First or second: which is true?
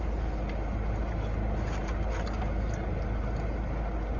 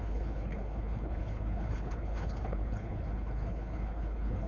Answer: first